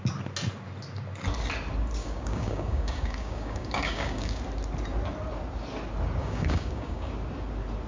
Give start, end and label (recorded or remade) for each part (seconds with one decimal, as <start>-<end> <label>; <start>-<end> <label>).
0.0-2.0 recorded; 2.0-4.4 remade; 4.4-6.2 recorded; 6.2-7.1 remade; 7.1-7.9 recorded